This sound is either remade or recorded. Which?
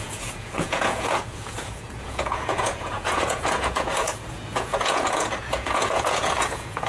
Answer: remade